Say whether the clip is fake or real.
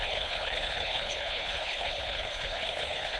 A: fake